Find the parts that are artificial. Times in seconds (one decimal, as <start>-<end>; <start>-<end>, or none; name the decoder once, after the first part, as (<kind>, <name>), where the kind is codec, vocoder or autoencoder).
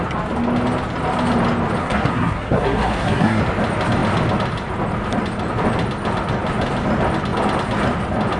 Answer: 1.8-3.4 (codec, SNAC)